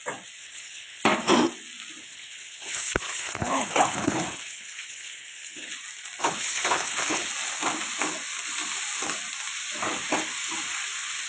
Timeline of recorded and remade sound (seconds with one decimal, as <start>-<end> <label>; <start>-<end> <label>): 0.0-0.4 recorded; 0.4-1.0 remade; 1.0-2.0 recorded; 2.0-5.7 remade; 5.7-6.2 recorded; 6.2-7.3 remade; 7.3-11.3 recorded